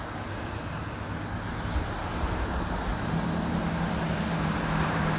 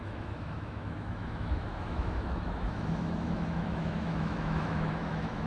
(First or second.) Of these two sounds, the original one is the first